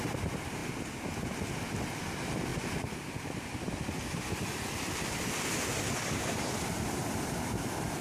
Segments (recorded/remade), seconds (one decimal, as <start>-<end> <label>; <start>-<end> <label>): 0.0-8.0 recorded